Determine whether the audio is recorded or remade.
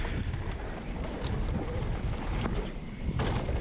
remade